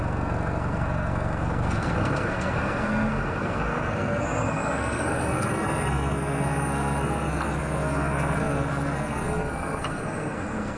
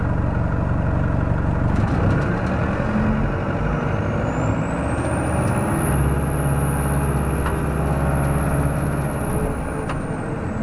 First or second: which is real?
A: second